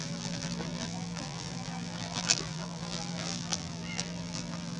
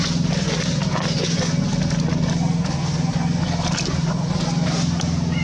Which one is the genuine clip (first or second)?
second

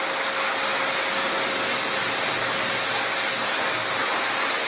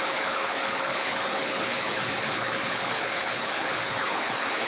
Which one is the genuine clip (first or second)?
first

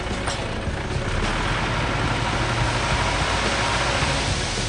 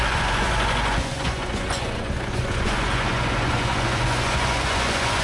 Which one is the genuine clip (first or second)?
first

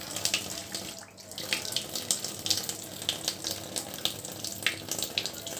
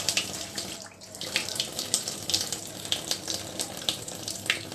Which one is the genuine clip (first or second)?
first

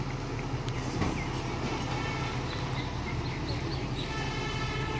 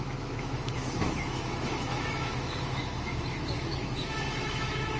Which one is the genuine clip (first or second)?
first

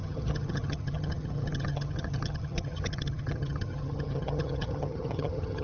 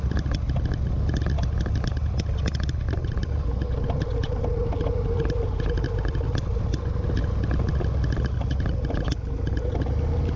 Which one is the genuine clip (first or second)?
second